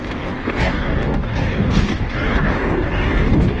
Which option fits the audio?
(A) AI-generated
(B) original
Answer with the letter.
A